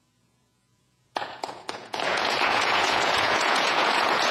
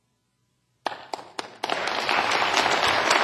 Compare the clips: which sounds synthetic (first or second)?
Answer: first